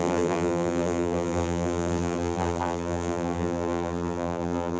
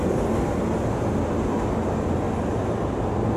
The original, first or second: second